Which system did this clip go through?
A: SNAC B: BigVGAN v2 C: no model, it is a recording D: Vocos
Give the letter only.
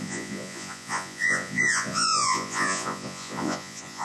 D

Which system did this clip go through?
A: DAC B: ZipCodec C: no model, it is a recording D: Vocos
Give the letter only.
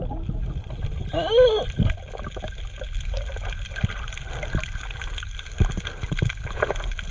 C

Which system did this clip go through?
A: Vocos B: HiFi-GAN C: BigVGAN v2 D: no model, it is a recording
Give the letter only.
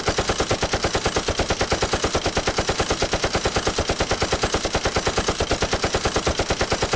D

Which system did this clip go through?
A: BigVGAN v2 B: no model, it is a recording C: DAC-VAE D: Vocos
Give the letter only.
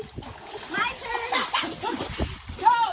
B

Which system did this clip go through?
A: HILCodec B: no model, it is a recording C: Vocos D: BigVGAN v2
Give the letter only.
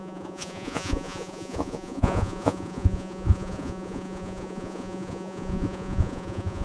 C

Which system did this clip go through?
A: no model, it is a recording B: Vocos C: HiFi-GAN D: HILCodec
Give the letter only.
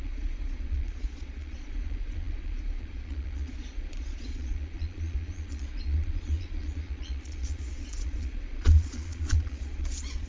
B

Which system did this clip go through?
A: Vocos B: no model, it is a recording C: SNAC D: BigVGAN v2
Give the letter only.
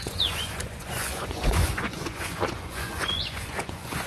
A